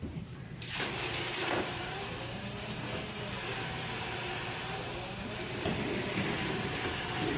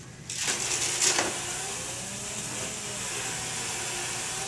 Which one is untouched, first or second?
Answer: second